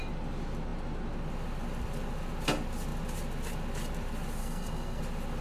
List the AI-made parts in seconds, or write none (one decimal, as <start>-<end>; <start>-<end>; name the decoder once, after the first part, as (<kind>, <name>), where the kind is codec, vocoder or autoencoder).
4.4-5.0 (codec, SNAC)